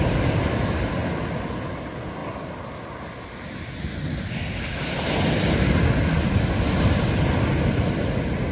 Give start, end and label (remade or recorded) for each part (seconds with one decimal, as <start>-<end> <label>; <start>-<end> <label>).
0.0-8.5 recorded